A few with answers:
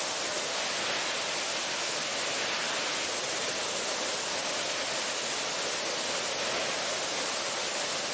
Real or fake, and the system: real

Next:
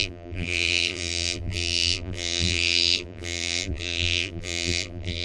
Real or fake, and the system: fake, vocoder, BigVGAN v2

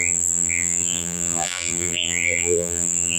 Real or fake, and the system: fake, vocoder, BigVGAN v2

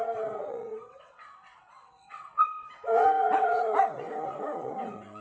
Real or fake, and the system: fake, vocoder, WaveNeXt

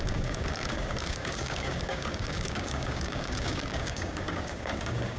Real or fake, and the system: fake, codec, DAC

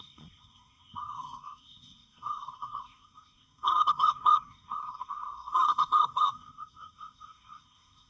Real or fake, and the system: fake, codec, SNAC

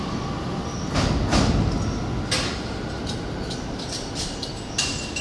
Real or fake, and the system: real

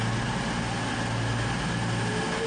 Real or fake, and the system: real